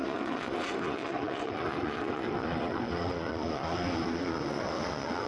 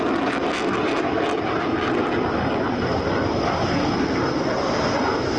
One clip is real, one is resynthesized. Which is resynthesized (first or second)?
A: first